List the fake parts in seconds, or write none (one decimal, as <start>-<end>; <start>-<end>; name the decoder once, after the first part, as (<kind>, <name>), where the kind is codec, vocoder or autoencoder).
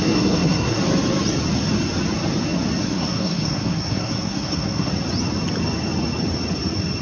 0.0-0.8 (codec, SNAC); 2.8-4.9